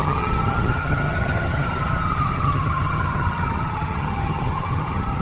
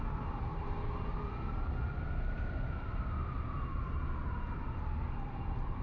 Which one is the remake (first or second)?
first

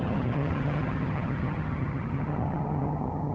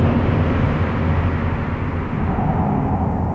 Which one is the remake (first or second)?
first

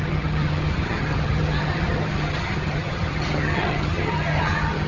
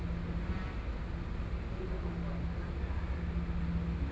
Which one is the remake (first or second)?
first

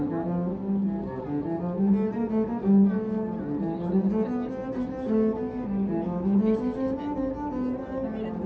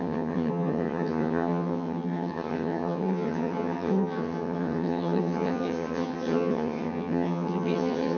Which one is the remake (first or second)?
second